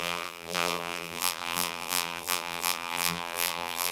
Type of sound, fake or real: fake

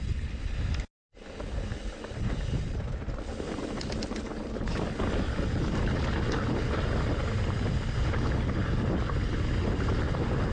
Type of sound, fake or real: real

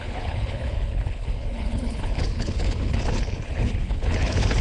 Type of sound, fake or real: fake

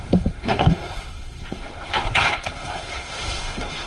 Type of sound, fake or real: fake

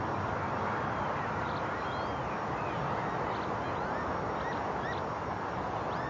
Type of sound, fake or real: real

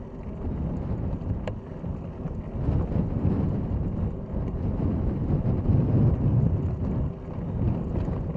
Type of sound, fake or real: real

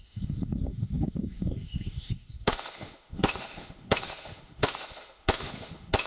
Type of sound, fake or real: fake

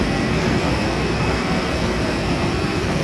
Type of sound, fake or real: fake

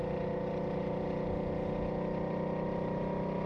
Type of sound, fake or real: real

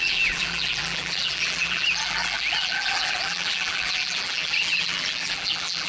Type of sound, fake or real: fake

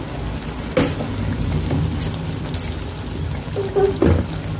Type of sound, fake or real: real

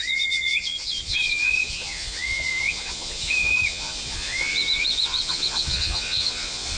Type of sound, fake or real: fake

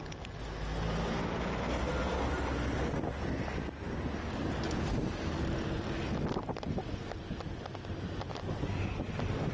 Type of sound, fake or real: real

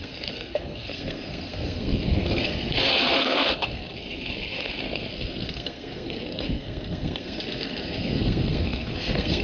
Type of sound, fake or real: fake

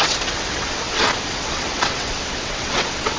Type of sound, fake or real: fake